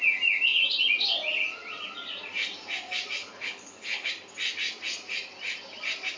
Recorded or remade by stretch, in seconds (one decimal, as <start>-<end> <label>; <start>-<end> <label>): 0.0-3.2 recorded; 3.2-4.1 remade; 4.1-6.2 recorded